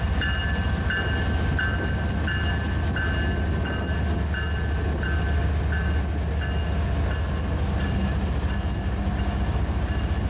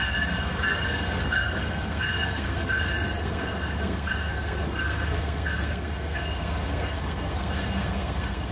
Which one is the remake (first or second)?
second